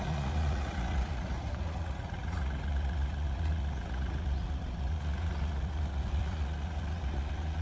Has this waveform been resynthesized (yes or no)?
yes